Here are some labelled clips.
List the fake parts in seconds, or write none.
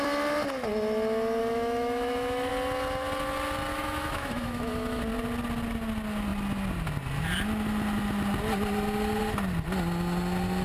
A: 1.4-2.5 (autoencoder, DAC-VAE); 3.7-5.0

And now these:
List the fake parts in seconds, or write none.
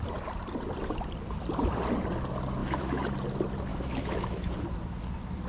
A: 2.6-3.1 (autoencoder, DAC-VAE); 3.7-4.5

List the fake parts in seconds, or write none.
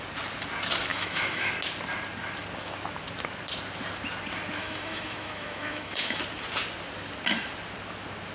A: 0.9-1.5 (autoencoder, DAC-VAE); 4.6-6.2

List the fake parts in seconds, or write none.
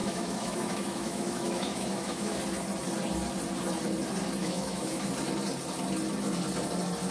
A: 0.0-2.4 (autoencoder, DAC-VAE); 4.4-5.1